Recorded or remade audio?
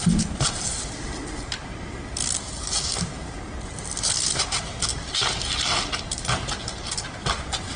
recorded